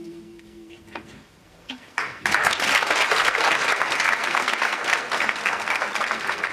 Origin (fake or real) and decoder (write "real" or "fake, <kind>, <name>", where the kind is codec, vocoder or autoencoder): fake, codec, SNAC